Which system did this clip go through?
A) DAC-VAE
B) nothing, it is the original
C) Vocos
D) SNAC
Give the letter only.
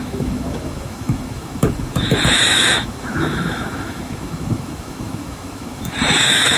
A